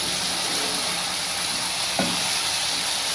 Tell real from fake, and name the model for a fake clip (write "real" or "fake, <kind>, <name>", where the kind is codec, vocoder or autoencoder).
real